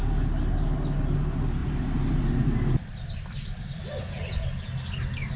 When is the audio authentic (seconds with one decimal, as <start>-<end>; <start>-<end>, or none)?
0.0-1.6; 4.7-5.4